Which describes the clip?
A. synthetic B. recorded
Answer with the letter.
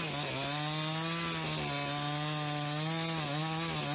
B